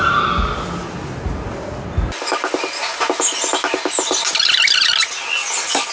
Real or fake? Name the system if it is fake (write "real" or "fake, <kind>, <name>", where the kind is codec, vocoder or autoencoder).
real